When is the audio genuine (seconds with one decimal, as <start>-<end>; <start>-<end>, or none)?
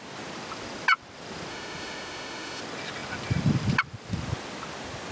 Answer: 0.0-1.5; 2.6-5.1